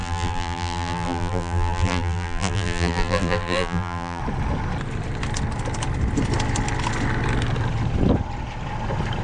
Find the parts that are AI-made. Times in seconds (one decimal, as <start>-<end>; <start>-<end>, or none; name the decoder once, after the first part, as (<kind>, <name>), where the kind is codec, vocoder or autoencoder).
0.0-4.2 (vocoder, BigVGAN v2)